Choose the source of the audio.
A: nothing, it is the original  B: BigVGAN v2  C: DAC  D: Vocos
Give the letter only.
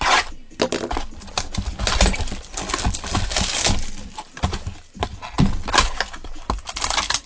A